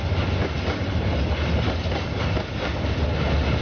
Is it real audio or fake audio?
real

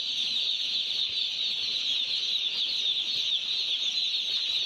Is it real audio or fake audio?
real